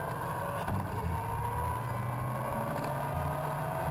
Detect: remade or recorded recorded